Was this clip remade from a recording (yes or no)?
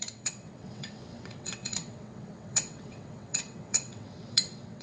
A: yes